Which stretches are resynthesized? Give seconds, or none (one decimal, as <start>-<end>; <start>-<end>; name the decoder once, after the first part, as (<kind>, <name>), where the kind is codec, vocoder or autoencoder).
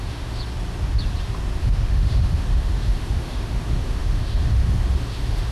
0.0-0.4 (autoencoder, DAC-VAE); 1.6-5.5